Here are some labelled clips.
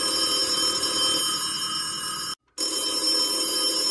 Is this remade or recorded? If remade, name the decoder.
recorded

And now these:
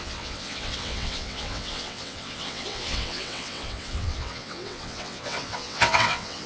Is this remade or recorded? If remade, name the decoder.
remade, vocoder, WaveNeXt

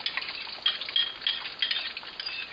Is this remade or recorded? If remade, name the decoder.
recorded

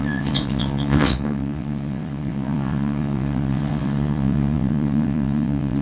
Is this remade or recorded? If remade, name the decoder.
remade, vocoder, WaveNeXt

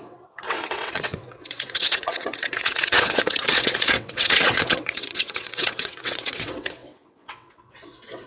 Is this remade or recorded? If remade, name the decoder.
remade, vocoder, WaveNeXt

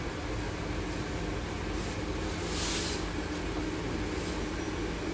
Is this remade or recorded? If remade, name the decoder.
recorded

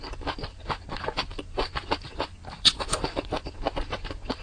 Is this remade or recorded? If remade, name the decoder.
recorded